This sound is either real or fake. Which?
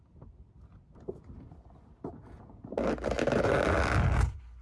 real